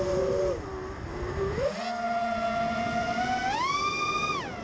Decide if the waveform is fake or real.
real